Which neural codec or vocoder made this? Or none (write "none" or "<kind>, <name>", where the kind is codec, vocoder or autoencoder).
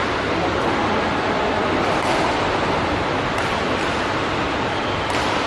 vocoder, BigVGAN v2